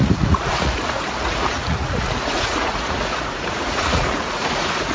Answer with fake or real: fake